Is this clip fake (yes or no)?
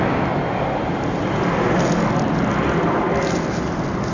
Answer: no